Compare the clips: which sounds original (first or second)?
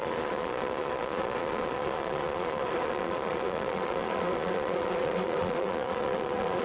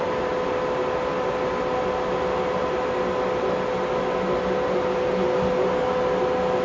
second